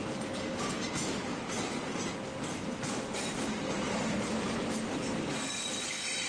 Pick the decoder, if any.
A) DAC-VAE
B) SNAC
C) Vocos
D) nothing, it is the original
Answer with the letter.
D